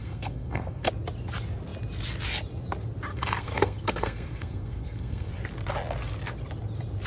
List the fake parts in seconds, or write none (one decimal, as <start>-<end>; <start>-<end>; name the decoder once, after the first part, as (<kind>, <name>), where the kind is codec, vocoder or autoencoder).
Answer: 0.0-0.9 (codec, SNAC); 3.1-5.3